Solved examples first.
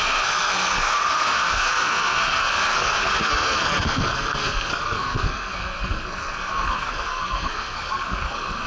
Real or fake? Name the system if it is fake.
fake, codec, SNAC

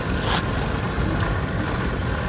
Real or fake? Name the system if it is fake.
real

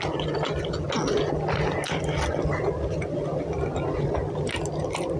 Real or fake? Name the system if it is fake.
real